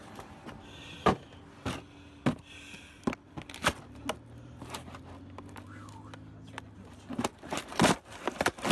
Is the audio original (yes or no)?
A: yes